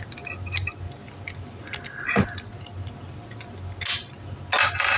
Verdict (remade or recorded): recorded